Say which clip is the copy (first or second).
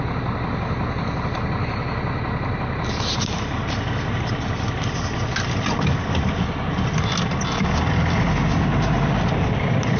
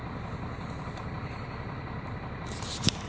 second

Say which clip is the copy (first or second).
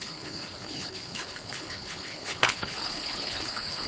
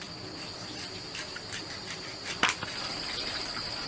first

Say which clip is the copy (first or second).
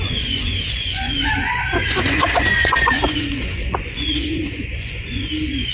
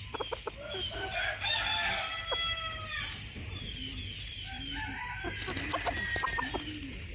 first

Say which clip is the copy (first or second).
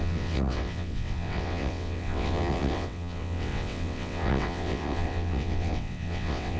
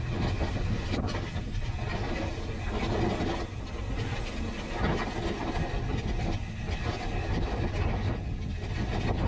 first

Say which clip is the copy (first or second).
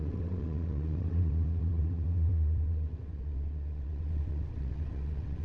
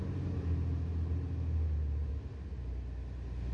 first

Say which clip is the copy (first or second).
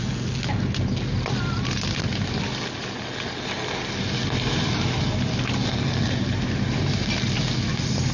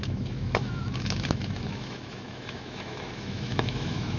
second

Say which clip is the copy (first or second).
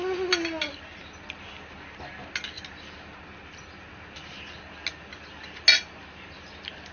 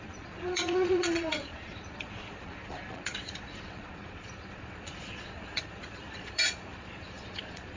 second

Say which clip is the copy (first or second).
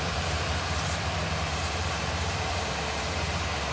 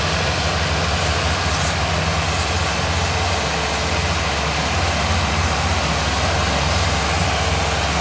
first